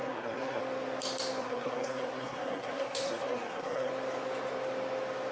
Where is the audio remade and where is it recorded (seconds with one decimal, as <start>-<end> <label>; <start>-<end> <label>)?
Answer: 0.0-0.6 remade; 0.6-1.4 recorded; 1.4-3.9 remade; 3.9-5.3 recorded